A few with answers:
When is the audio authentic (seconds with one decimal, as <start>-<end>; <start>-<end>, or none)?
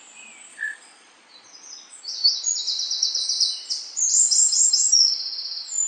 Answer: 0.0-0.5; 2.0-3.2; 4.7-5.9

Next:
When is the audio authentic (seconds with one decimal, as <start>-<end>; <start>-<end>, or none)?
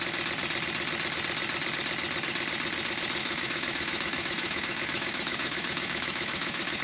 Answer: 0.0-3.2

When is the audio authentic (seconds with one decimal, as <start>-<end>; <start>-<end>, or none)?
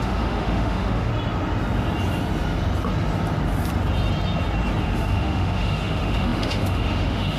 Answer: 1.1-4.8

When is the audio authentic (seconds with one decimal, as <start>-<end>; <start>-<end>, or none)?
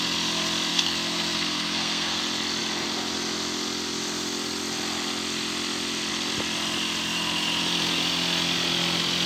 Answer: 0.0-0.7; 2.2-9.3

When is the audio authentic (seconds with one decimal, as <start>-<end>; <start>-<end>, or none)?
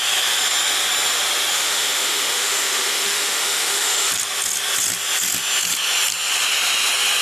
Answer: 0.0-1.5; 4.1-7.2